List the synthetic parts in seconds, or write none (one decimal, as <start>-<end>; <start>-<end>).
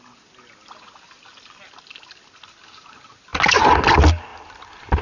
none